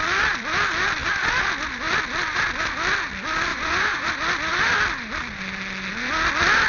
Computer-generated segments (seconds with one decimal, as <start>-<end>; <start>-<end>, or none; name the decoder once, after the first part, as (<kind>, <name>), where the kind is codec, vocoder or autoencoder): 3.5-4.1 (vocoder, Vocos)